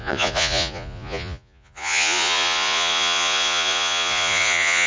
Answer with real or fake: fake